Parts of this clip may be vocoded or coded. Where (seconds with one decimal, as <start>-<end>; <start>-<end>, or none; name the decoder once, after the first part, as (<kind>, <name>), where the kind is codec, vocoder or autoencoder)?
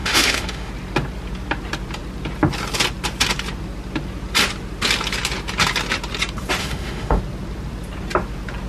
0.0-0.7 (autoencoder, DAC-VAE); 6.6-7.2